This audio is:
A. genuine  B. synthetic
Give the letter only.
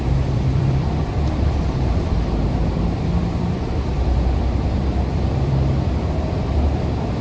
B